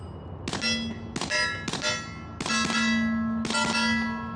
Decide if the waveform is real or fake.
real